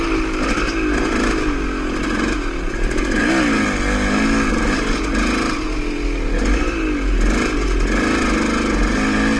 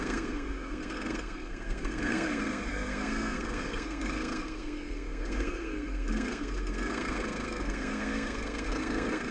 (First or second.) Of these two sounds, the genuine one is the first